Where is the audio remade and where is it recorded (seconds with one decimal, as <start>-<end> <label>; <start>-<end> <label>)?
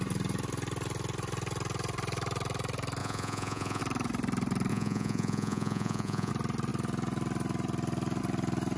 0.0-3.0 recorded; 3.0-3.8 remade; 3.8-4.7 recorded; 4.7-6.3 remade; 6.3-8.8 recorded